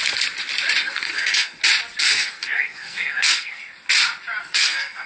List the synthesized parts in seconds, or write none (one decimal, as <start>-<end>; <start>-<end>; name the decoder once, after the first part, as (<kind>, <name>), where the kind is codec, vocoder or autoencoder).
0.8-1.6 (codec, SNAC); 2.0-3.6; 4.4-5.1